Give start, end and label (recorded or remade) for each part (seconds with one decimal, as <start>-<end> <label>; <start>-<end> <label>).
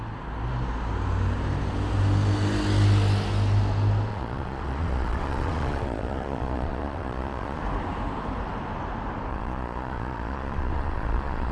0.0-4.1 recorded; 4.1-7.6 remade; 7.6-9.3 recorded; 9.3-11.5 remade